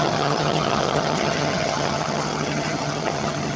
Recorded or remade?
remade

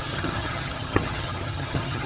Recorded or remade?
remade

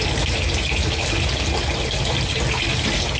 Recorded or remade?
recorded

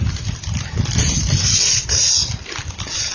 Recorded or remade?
recorded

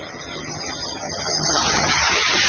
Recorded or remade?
remade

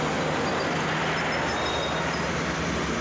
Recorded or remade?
recorded